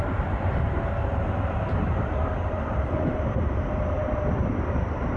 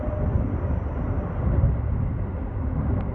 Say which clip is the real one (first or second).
second